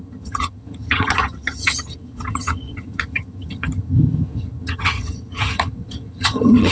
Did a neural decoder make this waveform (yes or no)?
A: yes